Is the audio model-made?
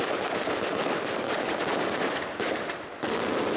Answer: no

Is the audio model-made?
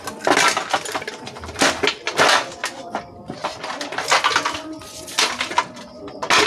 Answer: no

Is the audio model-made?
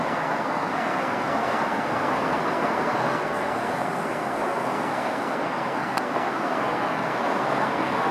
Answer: yes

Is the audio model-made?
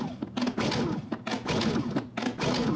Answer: no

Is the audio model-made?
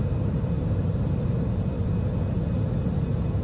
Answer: no